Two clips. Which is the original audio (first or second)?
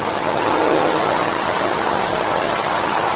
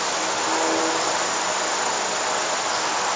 second